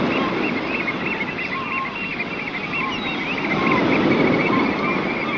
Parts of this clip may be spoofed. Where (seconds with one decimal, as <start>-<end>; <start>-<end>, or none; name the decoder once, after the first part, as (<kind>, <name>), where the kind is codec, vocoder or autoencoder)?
none